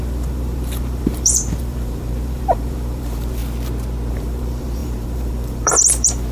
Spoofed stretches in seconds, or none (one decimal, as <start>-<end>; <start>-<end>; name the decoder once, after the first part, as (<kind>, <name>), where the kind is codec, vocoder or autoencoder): 0.0-3.4 (vocoder, BigVGAN v2); 4.1-6.3